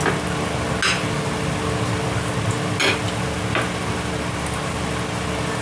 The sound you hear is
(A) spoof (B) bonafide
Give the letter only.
B